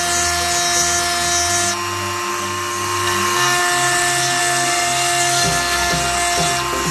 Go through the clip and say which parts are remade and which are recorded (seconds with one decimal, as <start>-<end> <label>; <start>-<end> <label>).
0.0-2.3 recorded; 2.3-3.6 remade; 3.6-4.4 recorded; 4.4-5.9 remade; 5.9-6.9 recorded